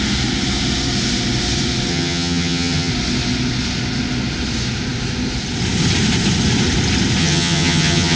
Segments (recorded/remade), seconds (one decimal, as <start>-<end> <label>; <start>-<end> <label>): 0.0-1.9 recorded; 1.9-2.9 remade; 2.9-7.2 recorded; 7.2-8.2 remade